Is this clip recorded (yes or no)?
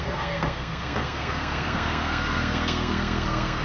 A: no